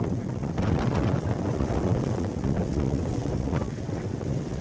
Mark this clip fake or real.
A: fake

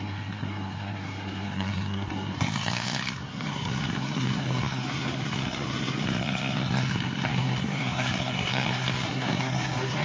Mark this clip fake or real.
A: fake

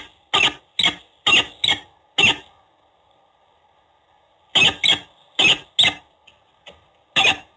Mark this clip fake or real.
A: real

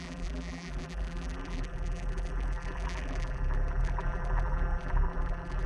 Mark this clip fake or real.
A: fake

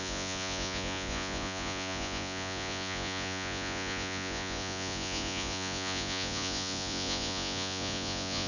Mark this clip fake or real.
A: fake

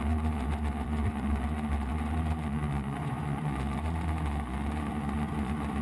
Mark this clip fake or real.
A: fake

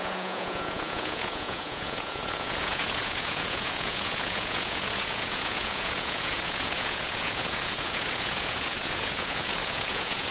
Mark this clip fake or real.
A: fake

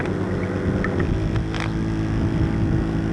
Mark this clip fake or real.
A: real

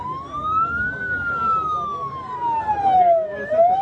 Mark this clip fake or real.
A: real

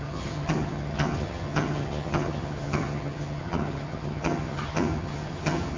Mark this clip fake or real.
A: fake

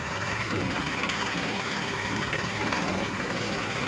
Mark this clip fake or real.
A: fake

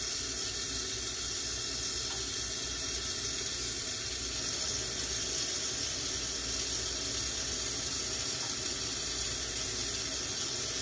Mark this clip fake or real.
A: real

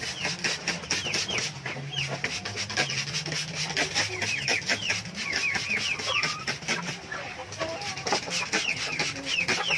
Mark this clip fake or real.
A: real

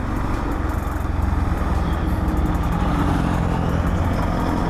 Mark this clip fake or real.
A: real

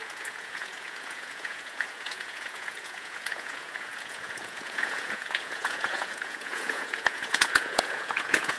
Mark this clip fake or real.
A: fake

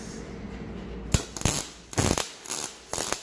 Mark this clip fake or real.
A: real